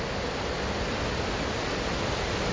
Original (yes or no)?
yes